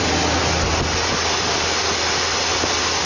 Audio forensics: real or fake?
real